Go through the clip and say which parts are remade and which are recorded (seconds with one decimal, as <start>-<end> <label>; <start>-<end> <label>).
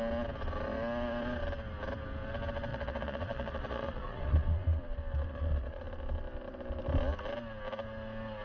0.0-2.7 recorded; 2.7-4.8 remade; 4.8-5.3 recorded; 5.3-5.8 remade; 5.8-8.4 recorded